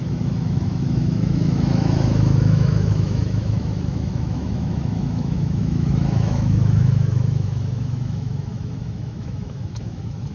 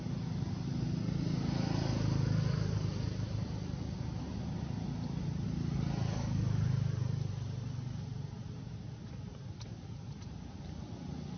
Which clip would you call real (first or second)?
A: second